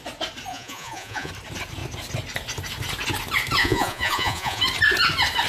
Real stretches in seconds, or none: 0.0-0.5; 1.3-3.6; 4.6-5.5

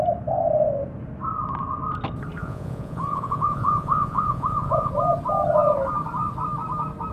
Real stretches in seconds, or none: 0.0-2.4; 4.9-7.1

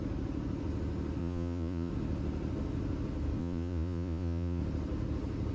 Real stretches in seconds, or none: 0.0-1.2; 1.9-3.4; 4.6-5.5

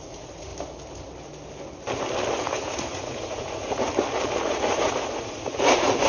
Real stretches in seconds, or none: 0.5-2.4; 3.9-4.4

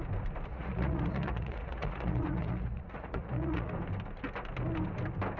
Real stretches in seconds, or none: 0.0-0.5; 3.7-5.4

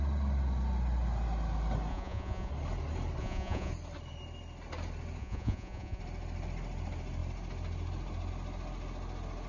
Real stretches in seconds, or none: 0.0-1.9; 2.5-3.2; 3.7-5.2; 6.0-9.5

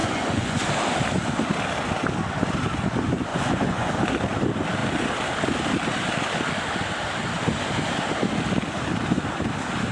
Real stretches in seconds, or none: 0.6-3.3; 3.9-9.9

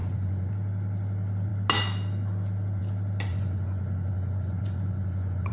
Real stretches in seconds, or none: 0.5-3.3